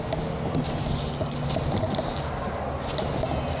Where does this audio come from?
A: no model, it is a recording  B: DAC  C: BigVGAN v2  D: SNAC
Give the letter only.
A